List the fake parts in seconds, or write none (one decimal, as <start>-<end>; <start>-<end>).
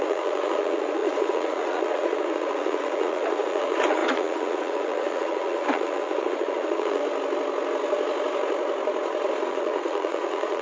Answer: 0.0-7.0; 9.5-10.6